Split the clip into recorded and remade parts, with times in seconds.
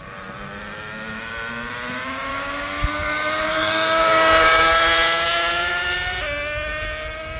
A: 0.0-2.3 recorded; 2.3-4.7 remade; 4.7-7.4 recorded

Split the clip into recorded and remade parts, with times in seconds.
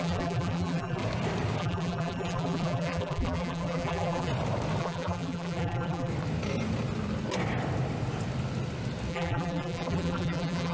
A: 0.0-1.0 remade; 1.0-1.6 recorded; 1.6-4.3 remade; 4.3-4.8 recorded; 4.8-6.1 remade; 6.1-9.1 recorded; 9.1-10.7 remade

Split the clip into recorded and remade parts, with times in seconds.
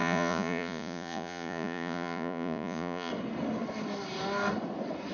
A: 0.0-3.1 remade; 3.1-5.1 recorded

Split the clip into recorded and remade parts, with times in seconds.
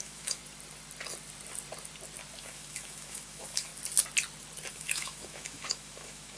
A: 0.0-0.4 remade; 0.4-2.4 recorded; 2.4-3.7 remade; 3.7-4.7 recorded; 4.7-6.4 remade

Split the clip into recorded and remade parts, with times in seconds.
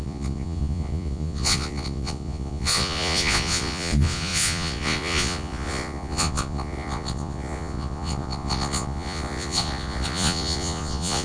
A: 0.0-11.2 remade